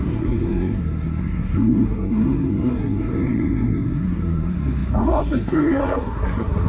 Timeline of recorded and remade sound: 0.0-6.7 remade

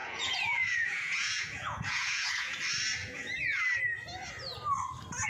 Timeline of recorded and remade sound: 0.0-2.6 remade; 2.6-3.0 recorded; 3.0-3.6 remade; 3.6-5.3 recorded

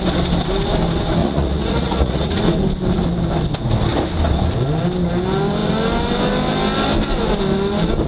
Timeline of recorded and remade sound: 0.0-1.2 recorded; 1.2-2.4 remade; 2.4-8.1 recorded

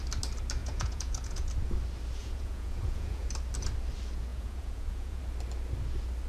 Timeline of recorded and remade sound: 0.0-0.6 recorded; 0.6-1.5 remade; 1.5-2.2 recorded; 2.2-3.3 remade; 3.3-4.3 recorded; 4.3-5.2 remade; 5.2-6.3 recorded